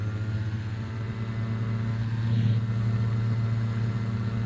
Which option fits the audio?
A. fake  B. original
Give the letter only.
B